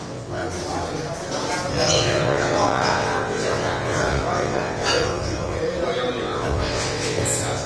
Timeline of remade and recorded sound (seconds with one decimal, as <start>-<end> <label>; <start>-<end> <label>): 0.0-0.4 remade; 0.4-1.7 recorded; 1.7-5.6 remade; 5.6-6.2 recorded; 6.2-7.7 remade

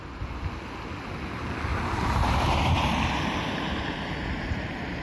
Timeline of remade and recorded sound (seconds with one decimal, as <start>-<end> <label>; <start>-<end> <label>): 0.0-1.7 recorded; 1.7-5.0 remade

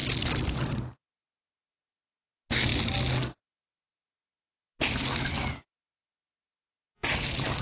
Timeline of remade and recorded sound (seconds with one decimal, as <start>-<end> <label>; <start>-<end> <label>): 0.0-7.6 recorded